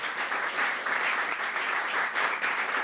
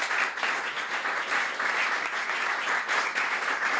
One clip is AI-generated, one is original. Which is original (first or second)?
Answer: second